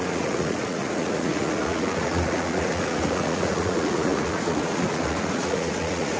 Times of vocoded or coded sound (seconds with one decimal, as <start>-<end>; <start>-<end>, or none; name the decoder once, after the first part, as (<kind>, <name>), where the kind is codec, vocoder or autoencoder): 0.0-6.2 (vocoder, Vocos)